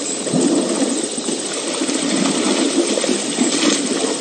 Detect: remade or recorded recorded